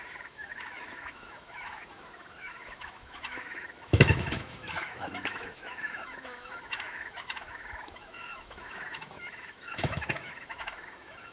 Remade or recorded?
remade